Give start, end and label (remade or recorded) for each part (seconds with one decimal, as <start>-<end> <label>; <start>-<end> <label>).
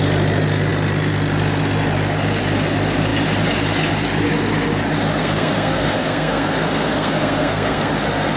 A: 0.0-5.2 recorded; 5.2-7.9 remade; 7.9-8.4 recorded